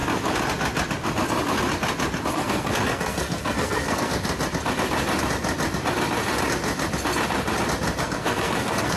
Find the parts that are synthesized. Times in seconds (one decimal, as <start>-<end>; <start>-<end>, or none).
2.3-4.1; 8.0-9.0